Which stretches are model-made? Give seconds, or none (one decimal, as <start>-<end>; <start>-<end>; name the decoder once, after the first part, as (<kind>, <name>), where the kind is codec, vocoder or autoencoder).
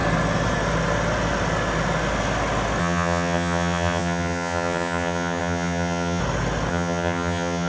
2.8-6.2 (vocoder, HiFi-GAN); 6.7-7.7